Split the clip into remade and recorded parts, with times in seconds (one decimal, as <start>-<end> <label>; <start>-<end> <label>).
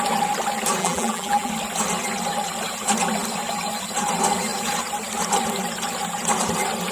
0.0-0.8 recorded; 0.8-1.5 remade; 1.5-6.9 recorded